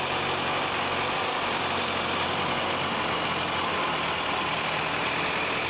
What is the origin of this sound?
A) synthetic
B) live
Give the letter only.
B